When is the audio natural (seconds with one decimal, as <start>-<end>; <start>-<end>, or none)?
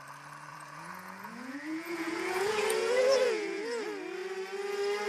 0.0-0.5; 3.6-5.1